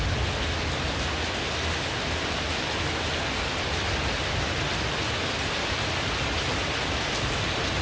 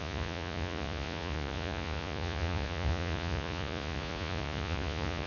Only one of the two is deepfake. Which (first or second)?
second